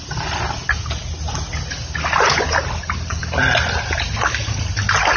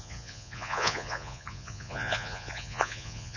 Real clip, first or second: first